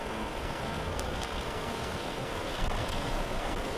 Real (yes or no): no